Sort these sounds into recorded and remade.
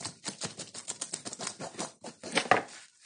recorded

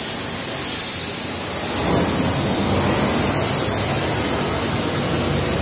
recorded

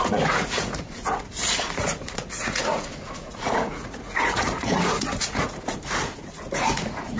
remade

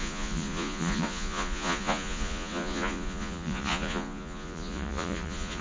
remade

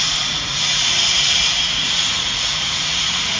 remade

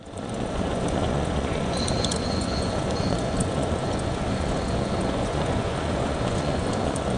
remade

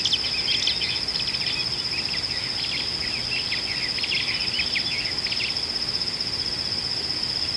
recorded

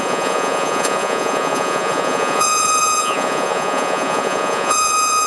remade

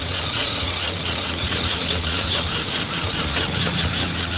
remade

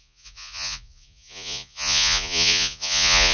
remade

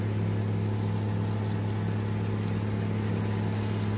recorded